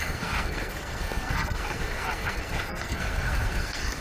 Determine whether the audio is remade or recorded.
remade